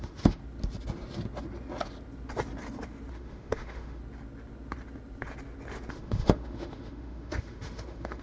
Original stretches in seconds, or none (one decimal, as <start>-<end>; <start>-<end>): 0.4-3.1; 4.0-5.9

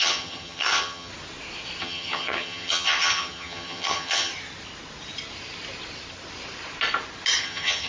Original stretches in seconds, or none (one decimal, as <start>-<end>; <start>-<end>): 1.1-1.8; 4.3-7.4

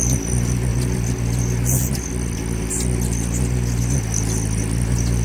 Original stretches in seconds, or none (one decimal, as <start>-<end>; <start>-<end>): 0.0-5.2

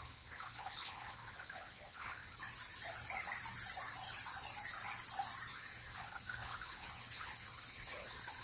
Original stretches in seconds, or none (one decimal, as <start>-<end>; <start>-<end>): 2.2-5.5

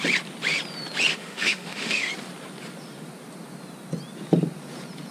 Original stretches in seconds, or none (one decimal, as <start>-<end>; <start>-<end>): 0.0-1.1; 2.1-5.1

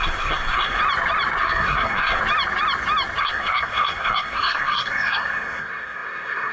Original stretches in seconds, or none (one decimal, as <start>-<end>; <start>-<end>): 0.8-1.4; 2.2-3.2

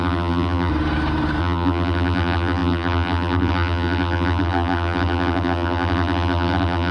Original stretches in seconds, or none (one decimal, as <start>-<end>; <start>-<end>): 0.7-1.4

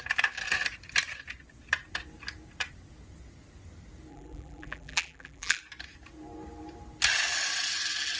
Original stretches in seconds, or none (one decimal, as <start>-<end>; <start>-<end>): 0.0-4.1; 5.6-8.2